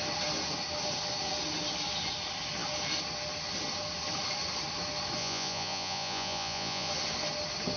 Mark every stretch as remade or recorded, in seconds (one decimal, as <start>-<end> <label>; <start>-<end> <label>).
0.0-5.2 recorded; 5.2-6.9 remade; 6.9-7.8 recorded